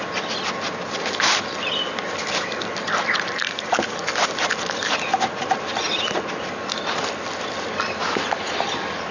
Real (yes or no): yes